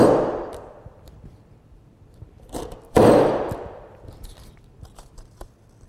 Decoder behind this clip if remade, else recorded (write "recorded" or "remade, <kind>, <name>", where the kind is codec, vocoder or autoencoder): remade, vocoder, BigVGAN v2